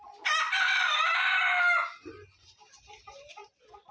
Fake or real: real